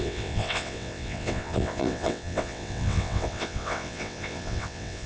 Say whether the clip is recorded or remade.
remade